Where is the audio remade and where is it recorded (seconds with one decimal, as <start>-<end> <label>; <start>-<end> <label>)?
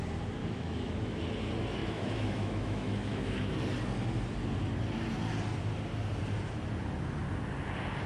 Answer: 0.0-0.4 recorded; 0.4-1.2 remade; 1.2-1.8 recorded; 1.8-3.5 remade; 3.5-8.1 recorded